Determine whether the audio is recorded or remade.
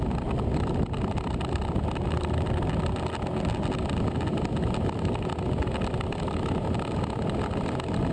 recorded